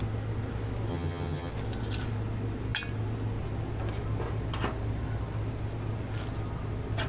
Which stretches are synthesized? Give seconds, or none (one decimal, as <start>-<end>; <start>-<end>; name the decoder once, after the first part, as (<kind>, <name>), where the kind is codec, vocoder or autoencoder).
0.9-1.5 (vocoder, HiFi-GAN)

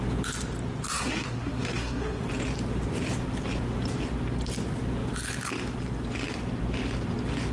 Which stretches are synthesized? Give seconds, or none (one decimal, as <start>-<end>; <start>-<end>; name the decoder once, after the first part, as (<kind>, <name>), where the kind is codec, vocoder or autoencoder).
0.9-2.2 (codec, SNAC)

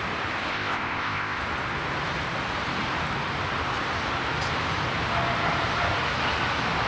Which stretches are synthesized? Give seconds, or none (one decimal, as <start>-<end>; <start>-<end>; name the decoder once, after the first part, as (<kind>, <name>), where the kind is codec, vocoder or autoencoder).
0.5-1.4 (codec, ZipCodec)

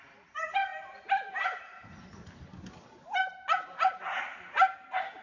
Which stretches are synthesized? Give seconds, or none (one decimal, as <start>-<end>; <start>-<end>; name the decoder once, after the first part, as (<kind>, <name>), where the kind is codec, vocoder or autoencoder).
none

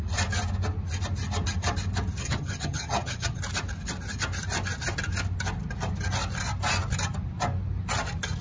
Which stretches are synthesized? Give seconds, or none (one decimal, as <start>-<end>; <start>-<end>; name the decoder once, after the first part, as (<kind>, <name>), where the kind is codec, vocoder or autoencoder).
2.2-3.4 (vocoder, HiFi-GAN)

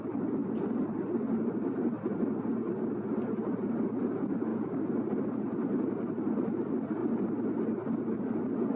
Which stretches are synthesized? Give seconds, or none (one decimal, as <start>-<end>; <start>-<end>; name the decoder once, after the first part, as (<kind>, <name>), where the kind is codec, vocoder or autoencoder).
0.0-4.5 (vocoder, BigVGAN v2); 5.3-8.8